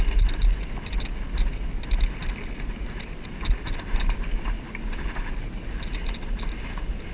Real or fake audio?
real